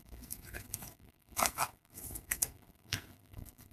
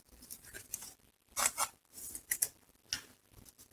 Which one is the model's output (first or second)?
first